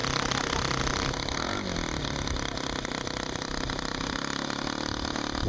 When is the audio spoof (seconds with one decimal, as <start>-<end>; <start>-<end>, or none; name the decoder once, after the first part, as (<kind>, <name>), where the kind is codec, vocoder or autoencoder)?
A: none